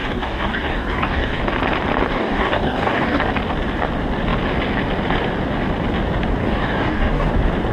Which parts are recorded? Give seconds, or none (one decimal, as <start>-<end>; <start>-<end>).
1.4-2.1; 3.2-6.4; 7.3-7.7